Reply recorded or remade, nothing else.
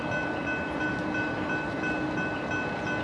recorded